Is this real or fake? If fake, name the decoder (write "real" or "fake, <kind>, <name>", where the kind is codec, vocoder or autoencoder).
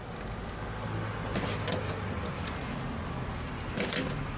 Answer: real